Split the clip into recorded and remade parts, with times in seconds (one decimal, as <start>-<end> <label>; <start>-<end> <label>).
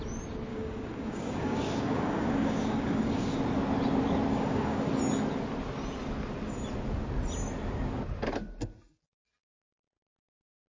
0.0-0.5 recorded; 0.5-3.4 remade; 3.4-4.3 recorded; 4.3-4.9 remade; 4.9-10.7 recorded